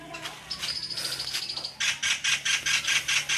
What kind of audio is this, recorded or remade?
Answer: recorded